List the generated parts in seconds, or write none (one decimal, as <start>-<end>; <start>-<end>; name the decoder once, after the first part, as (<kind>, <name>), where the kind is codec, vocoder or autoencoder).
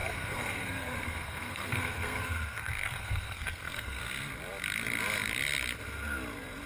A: 0.0-4.0 (codec, SNAC)